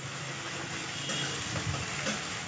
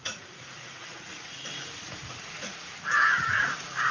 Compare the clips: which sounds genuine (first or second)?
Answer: first